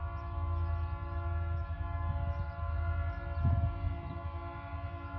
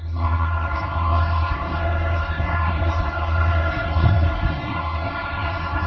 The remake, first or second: second